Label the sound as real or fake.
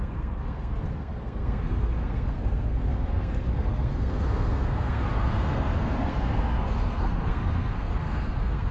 fake